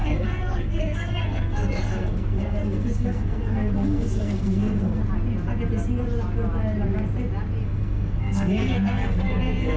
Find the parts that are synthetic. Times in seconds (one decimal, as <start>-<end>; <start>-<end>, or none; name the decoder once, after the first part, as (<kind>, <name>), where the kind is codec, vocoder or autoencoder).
0.0-5.0 (codec, SNAC); 7.6-9.8

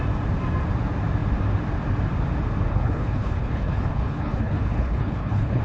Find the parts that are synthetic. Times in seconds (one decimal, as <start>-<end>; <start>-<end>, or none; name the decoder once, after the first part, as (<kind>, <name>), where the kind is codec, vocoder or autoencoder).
2.7-5.6 (codec, HILCodec)

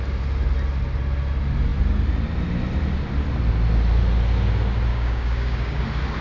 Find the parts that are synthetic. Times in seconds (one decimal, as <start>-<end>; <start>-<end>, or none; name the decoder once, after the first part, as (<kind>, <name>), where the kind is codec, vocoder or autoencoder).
4.9-5.8 (codec, DAC)

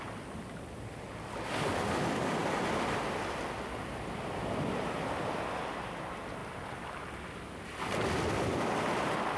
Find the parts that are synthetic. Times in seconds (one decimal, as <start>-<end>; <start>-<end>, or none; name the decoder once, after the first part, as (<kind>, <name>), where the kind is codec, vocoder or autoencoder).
none

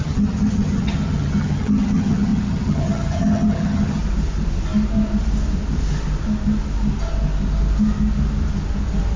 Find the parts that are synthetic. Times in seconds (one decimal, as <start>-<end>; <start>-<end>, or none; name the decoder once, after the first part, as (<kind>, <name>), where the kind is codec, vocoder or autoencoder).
0.0-4.0 (vocoder, HiFi-GAN)